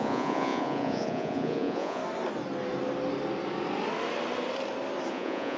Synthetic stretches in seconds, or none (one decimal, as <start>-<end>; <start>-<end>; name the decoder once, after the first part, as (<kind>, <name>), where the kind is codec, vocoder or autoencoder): 0.0-2.0 (vocoder, Vocos); 5.1-5.6